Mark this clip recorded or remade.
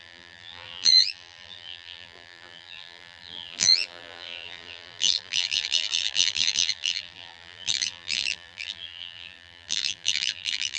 remade